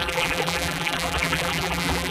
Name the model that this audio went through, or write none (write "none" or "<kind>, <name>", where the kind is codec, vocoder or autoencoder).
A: vocoder, BigVGAN v2